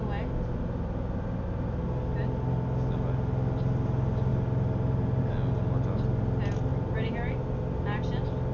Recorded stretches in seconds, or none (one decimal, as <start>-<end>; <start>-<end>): 0.0-6.7; 7.6-8.5